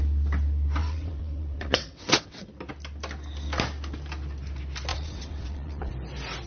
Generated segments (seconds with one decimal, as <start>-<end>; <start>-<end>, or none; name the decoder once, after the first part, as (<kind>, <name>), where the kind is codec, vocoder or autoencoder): 0.8-2.5 (vocoder, WaveNeXt); 4.9-5.9